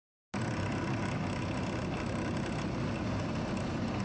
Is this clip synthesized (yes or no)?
no